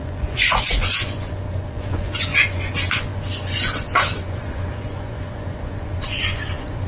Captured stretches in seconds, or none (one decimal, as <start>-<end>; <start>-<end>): none